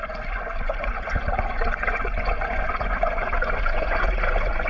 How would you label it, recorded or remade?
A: remade